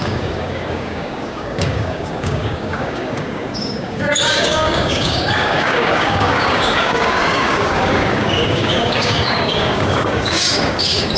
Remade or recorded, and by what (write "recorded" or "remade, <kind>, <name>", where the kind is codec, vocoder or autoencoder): remade, codec, DAC